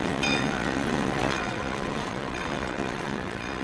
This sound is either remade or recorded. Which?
remade